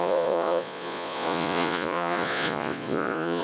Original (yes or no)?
no